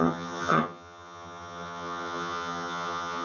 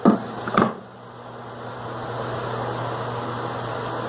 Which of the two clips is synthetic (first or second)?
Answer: first